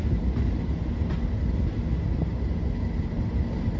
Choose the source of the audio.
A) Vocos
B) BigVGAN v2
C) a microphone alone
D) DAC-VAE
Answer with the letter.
C